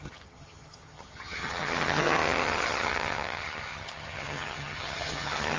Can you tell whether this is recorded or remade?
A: remade